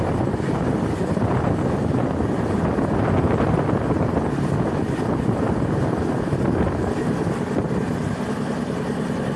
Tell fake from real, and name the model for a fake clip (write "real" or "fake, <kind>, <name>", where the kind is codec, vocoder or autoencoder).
real